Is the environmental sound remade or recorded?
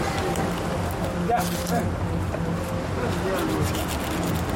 recorded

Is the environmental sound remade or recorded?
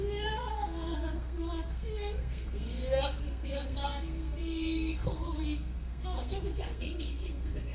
remade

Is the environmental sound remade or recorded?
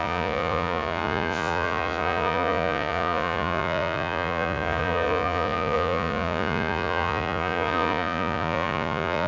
remade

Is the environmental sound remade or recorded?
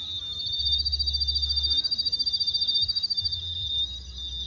recorded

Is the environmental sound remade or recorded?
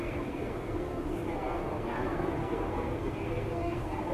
remade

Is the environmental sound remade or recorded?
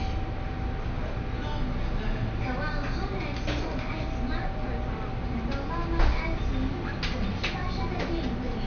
recorded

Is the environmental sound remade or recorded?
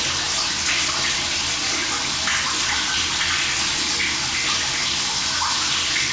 recorded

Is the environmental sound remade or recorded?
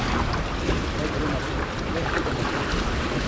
recorded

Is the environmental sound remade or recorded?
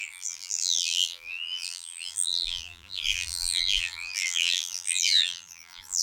remade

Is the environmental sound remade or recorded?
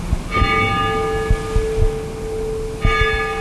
recorded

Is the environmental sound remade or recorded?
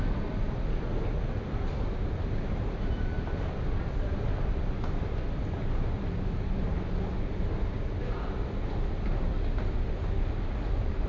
recorded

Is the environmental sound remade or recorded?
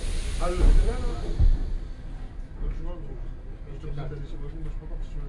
recorded